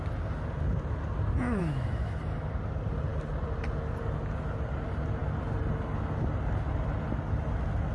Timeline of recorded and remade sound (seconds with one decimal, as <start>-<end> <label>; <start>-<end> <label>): 0.0-1.6 recorded; 1.6-2.2 remade; 2.2-7.9 recorded